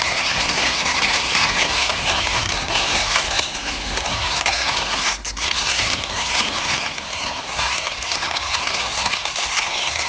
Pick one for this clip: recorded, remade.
remade